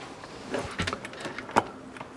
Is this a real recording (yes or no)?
yes